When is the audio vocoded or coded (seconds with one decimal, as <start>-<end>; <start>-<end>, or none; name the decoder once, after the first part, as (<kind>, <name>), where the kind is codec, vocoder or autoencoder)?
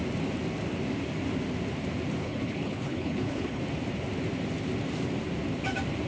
2.2-3.6 (codec, HILCodec)